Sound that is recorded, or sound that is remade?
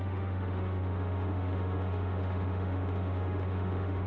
remade